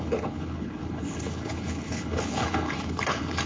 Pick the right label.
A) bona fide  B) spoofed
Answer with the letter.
B